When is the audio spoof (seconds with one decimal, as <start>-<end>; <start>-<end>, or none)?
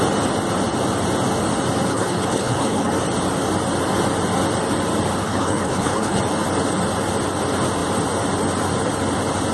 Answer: 1.9-2.9; 5.2-6.2